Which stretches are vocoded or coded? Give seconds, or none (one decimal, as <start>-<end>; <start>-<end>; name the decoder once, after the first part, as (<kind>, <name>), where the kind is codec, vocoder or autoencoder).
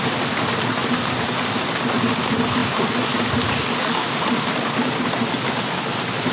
none